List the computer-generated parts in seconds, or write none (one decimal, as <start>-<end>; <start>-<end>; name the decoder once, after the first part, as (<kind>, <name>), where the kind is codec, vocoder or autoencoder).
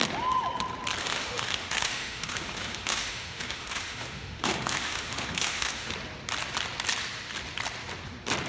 1.0-5.9 (autoencoder, DAC-VAE)